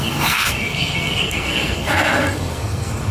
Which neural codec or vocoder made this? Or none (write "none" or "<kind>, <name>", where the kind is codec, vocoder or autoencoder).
codec, SNAC